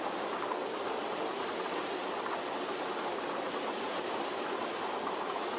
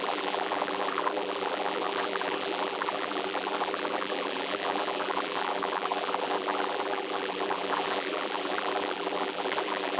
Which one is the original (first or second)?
first